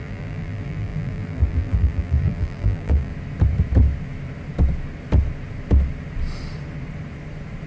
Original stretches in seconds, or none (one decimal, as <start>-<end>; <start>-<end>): 3.1-7.7